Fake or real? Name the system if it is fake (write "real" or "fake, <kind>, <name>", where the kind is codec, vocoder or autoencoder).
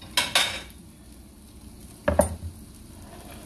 real